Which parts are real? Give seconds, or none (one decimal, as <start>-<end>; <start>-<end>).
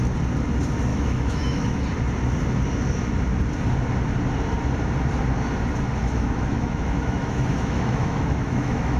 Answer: 0.0-0.9; 1.8-6.0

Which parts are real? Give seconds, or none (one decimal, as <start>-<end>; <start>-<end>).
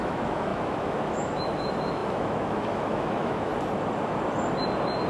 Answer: 3.5-5.1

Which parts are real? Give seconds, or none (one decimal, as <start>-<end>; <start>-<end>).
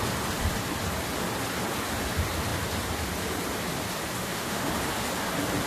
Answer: 0.0-4.2; 4.7-5.7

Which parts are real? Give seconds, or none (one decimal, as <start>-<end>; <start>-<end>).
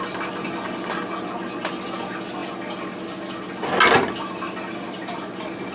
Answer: 0.0-5.7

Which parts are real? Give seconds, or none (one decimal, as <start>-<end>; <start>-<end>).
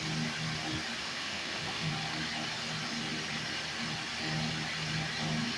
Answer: 0.0-1.0; 1.9-5.6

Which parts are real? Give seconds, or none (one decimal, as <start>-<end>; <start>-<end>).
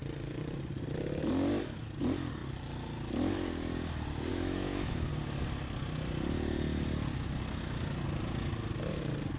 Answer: 0.0-4.3; 5.1-9.4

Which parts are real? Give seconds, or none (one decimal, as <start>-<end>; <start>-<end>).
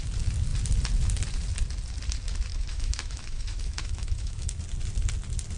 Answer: 0.0-2.5; 4.6-5.6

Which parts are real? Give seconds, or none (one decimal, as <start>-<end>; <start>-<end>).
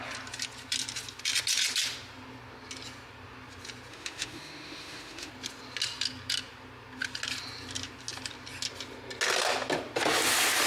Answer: 0.0-3.9; 5.3-10.7